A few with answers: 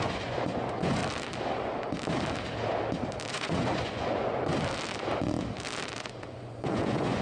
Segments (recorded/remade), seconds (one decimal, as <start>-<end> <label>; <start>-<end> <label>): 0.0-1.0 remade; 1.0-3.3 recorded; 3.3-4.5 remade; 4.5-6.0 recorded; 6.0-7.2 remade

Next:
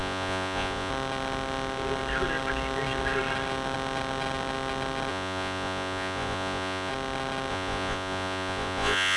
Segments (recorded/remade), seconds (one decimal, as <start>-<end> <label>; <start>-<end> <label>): 0.0-0.9 remade; 0.9-5.1 recorded; 5.1-6.9 remade; 6.9-7.5 recorded; 7.5-9.2 remade

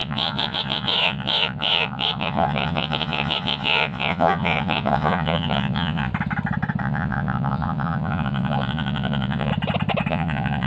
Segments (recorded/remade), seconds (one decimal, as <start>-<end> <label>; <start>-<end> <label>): 0.0-6.1 remade; 6.1-6.8 recorded; 6.8-9.5 remade; 9.5-10.1 recorded; 10.1-10.7 remade

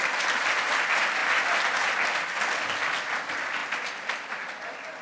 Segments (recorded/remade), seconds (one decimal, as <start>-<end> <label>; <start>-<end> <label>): 0.0-5.0 recorded

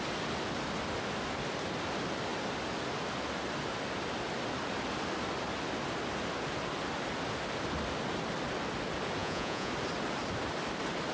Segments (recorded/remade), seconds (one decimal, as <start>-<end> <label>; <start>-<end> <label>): 0.0-9.2 recorded; 9.2-9.7 remade; 9.7-11.1 recorded

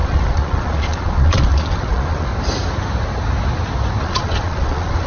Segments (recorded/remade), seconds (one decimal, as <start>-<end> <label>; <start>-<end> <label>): 0.0-2.3 remade; 2.3-4.0 recorded; 4.0-5.1 remade

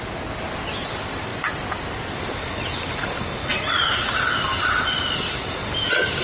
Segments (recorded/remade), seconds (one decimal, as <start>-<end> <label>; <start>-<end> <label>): 0.0-3.3 recorded; 3.3-4.2 remade; 4.2-6.2 recorded